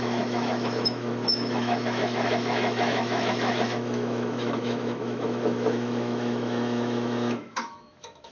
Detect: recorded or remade remade